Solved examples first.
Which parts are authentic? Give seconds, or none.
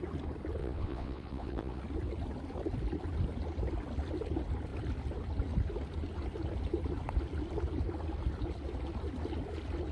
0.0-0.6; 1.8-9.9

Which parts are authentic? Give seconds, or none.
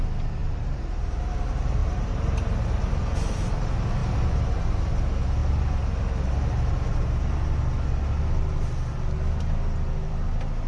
0.0-0.4; 1.2-1.8; 3.0-4.0; 4.9-10.7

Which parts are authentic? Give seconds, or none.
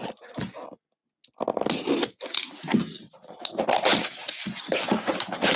0.0-5.6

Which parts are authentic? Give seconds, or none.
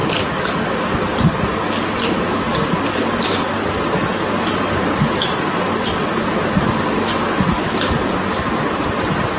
0.0-9.4